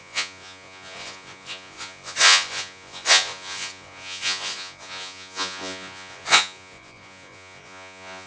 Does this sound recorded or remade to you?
remade